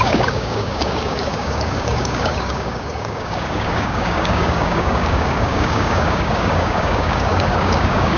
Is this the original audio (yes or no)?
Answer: no